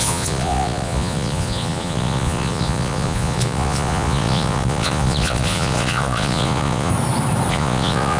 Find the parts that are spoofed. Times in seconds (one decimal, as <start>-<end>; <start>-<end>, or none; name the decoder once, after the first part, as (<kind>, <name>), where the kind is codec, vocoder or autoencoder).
0.0-6.9 (vocoder, Vocos); 7.5-8.2